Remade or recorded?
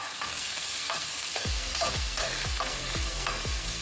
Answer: remade